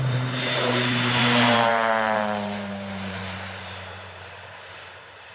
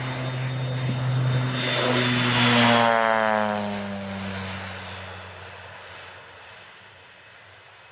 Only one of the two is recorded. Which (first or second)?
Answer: second